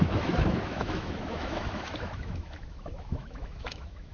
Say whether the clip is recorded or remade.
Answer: remade